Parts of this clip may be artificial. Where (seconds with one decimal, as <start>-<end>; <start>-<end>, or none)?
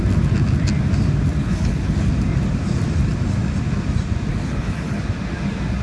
1.4-2.1; 4.3-5.0